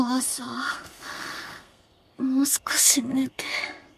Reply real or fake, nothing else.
fake